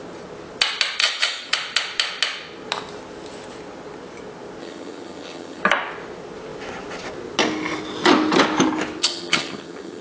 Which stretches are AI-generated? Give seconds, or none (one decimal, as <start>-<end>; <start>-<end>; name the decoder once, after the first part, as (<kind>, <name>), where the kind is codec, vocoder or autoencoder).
1.0-1.5 (vocoder, HiFi-GAN); 4.6-5.6; 9.0-10.0